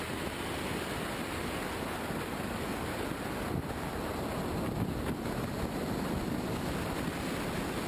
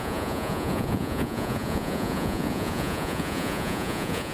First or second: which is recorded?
first